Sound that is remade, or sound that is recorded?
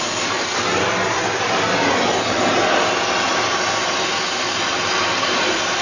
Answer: recorded